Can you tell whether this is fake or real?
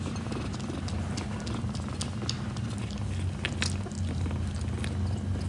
real